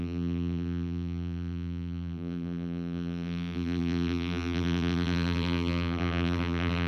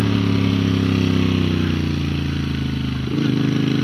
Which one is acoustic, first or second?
second